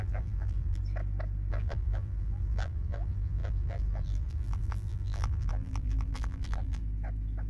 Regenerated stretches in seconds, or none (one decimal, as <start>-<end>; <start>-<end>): 0.0-0.8; 1.5-6.8